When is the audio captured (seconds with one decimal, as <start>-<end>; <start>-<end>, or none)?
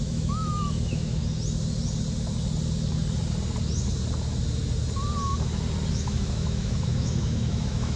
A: 1.2-5.9